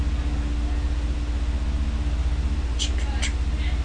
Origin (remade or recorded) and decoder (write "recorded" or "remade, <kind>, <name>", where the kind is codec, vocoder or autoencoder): recorded